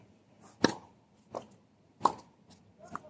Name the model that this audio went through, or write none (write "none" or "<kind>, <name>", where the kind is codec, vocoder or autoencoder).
none